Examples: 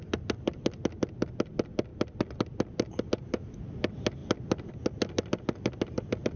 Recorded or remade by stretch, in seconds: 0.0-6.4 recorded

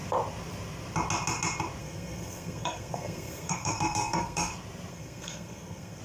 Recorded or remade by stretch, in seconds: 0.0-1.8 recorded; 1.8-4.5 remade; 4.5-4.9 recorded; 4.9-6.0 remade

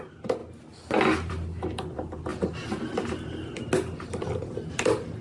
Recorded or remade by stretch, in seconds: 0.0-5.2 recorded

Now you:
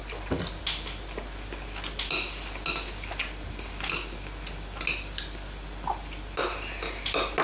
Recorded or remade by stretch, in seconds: 0.0-7.4 recorded

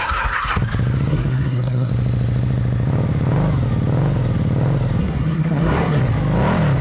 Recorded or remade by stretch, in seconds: 0.0-0.5 remade; 0.5-1.1 recorded; 1.1-1.9 remade; 1.9-5.0 recorded; 5.0-6.0 remade; 6.0-6.8 recorded